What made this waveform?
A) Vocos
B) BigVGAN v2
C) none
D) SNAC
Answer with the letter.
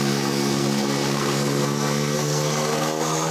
D